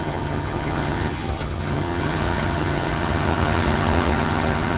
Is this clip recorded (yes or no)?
no